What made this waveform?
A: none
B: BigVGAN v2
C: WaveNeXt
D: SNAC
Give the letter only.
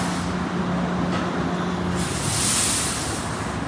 A